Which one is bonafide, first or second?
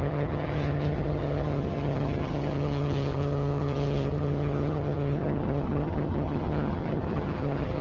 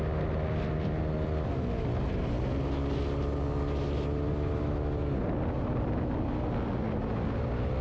second